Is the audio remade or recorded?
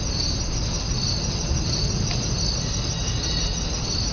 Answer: recorded